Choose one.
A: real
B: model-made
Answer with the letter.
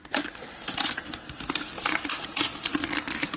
B